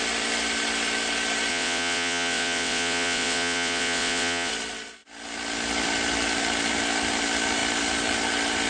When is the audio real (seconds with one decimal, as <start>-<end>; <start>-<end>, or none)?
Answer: 0.0-1.5; 4.5-8.7

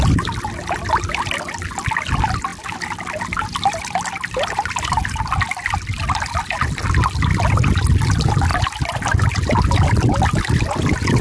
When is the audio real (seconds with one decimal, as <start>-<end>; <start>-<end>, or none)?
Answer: 0.0-11.2